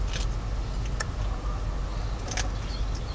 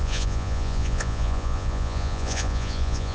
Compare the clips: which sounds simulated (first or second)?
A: second